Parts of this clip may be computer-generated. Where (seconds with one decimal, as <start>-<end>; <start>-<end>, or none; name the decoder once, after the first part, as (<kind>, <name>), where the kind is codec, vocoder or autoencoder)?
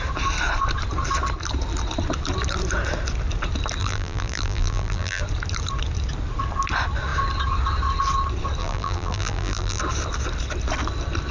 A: 3.8-5.2 (vocoder, BigVGAN v2); 8.6-9.8